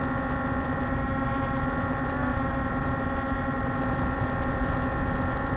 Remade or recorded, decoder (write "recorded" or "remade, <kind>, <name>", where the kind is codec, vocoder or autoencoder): recorded